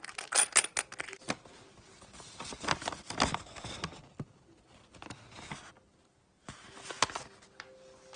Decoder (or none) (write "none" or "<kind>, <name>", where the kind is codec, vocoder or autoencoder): none